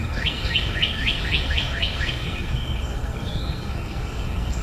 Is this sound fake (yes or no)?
yes